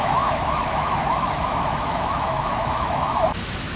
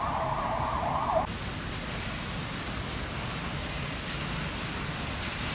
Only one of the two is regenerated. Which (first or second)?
first